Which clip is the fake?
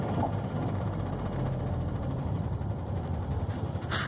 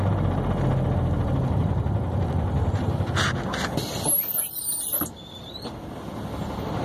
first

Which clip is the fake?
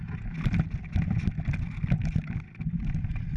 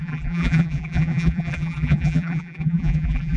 second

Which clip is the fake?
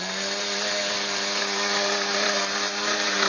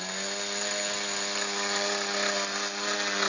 first